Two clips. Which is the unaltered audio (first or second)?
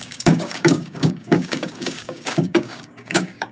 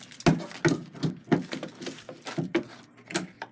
second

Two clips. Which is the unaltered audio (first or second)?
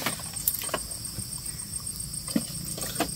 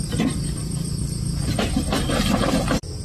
second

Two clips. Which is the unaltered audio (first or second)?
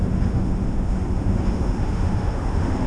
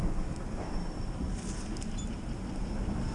second